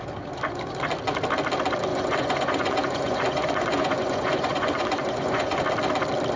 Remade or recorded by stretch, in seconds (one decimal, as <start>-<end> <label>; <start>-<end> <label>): 0.0-1.9 recorded; 1.9-5.6 remade; 5.6-6.4 recorded